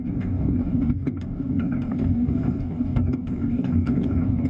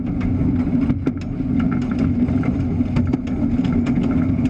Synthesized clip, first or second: first